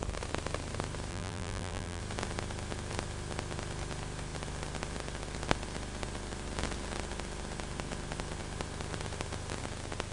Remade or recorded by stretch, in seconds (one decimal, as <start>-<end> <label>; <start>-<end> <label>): 0.0-1.1 recorded; 1.1-2.0 remade; 2.0-10.1 recorded